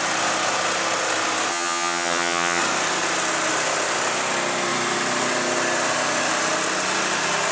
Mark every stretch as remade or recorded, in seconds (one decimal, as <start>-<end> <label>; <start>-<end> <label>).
0.0-1.5 recorded; 1.5-2.6 remade; 2.6-7.5 recorded